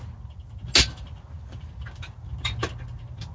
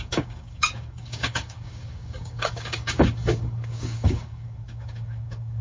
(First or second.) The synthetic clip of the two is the second